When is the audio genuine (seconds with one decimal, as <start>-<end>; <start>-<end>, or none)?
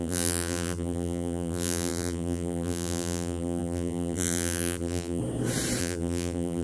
5.2-5.8